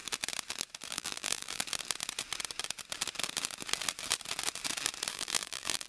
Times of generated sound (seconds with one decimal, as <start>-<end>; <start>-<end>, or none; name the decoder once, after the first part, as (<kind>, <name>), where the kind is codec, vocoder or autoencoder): 0.9-1.6 (vocoder, BigVGAN v2); 5.1-5.9